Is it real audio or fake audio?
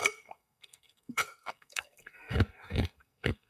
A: fake